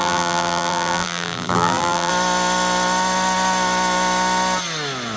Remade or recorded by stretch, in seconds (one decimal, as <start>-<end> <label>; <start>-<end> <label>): 0.0-2.1 remade; 2.1-5.2 recorded